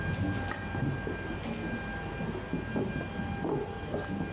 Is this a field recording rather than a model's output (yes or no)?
yes